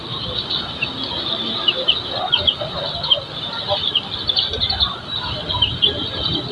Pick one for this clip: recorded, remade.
recorded